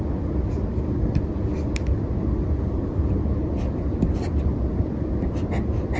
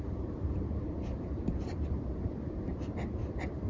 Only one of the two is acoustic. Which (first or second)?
first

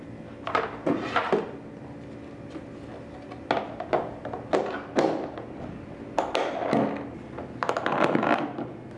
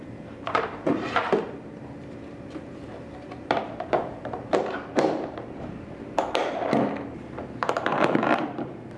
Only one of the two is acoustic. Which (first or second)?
first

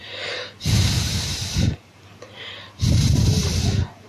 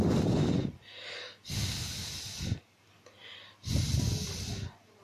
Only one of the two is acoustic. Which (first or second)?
second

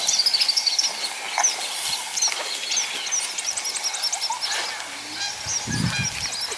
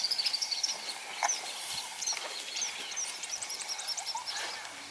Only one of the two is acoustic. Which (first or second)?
first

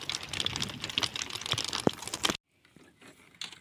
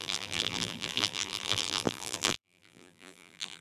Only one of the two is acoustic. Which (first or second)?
first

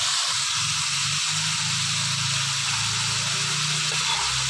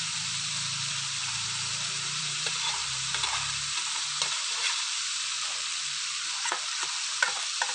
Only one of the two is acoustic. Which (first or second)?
first